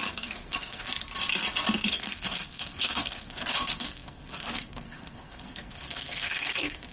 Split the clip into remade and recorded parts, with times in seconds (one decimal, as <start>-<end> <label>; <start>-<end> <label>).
0.0-0.9 remade; 0.9-1.9 recorded; 1.9-6.9 remade